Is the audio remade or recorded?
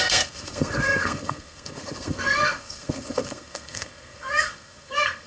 remade